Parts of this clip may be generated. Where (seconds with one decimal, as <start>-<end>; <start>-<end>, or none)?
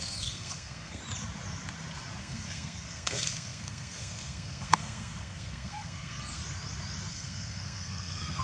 0.0-1.0; 2.2-6.4; 7.1-8.4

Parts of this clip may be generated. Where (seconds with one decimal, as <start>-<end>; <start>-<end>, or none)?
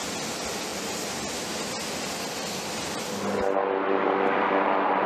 none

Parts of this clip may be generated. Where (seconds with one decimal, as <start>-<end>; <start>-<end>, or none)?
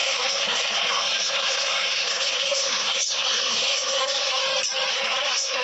0.0-4.4; 4.9-5.6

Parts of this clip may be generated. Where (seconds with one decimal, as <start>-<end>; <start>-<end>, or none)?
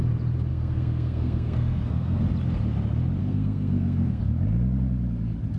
0.5-2.2; 3.2-4.2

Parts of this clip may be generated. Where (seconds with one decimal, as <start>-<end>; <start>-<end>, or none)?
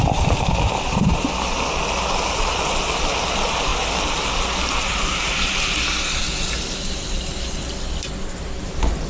none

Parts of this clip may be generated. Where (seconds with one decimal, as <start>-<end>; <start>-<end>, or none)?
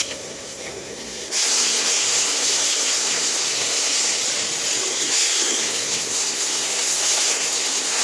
0.0-4.2; 4.9-8.0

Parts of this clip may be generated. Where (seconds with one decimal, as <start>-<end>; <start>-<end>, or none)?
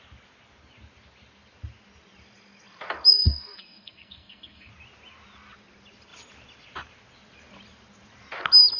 3.1-4.7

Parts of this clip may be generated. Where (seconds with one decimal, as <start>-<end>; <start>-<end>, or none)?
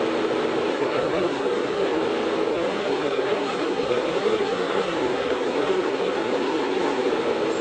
0.7-2.0; 2.5-7.1